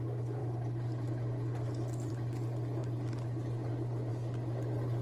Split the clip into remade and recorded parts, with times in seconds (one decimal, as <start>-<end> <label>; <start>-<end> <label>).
0.0-5.0 recorded